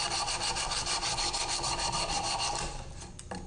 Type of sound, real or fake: real